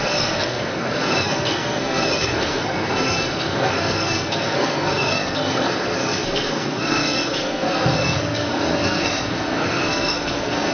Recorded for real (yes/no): no